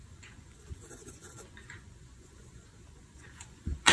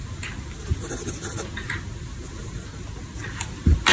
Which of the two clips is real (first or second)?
second